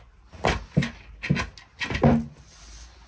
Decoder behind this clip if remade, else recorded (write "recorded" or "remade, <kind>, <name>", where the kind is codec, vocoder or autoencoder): recorded